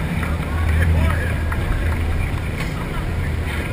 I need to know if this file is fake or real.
fake